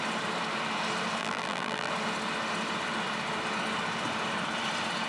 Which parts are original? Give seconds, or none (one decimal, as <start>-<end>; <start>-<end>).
0.0-1.2; 1.9-5.1